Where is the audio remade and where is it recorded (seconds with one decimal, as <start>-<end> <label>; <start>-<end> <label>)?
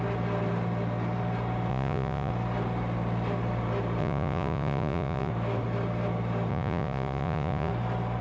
0.0-1.7 recorded; 1.7-2.3 remade; 2.3-4.0 recorded; 4.0-5.3 remade; 5.3-6.5 recorded; 6.5-7.7 remade; 7.7-8.2 recorded